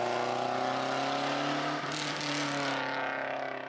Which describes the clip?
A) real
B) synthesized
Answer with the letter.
A